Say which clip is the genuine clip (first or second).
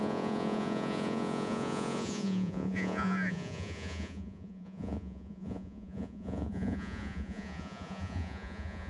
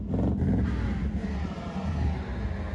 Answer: second